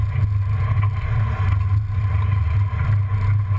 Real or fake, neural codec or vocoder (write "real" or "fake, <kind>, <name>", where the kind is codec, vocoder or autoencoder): real